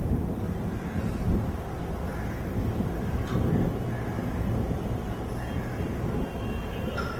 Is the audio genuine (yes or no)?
yes